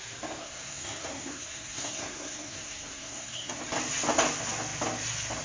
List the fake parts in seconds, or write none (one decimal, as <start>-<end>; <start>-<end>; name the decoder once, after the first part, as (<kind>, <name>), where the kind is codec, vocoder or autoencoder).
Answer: 0.4-3.6 (codec, SNAC)